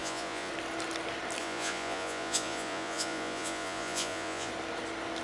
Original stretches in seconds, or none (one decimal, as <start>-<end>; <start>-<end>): 0.5-1.4; 4.5-5.2